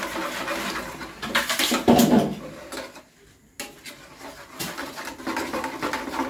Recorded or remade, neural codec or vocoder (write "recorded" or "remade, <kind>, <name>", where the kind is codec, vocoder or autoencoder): recorded